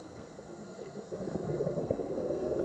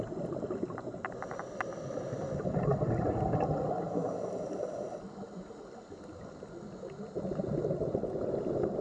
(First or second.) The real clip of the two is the second